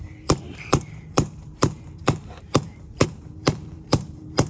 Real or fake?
fake